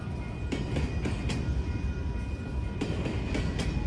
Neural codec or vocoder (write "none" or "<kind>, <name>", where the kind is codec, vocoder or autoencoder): none